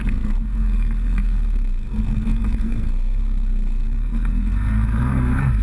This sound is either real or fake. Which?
fake